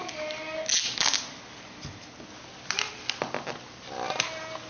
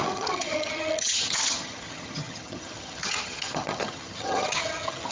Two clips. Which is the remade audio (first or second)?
second